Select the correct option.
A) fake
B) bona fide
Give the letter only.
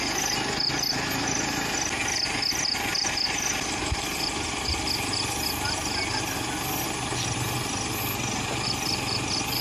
B